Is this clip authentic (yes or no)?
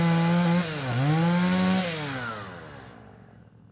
yes